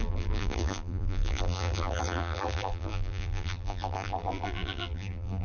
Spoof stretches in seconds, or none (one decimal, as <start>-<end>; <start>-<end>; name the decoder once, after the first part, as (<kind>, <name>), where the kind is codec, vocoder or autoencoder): 0.0-5.4 (vocoder, BigVGAN v2)